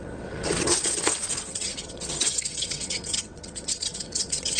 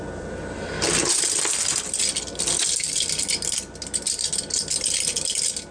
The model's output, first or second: first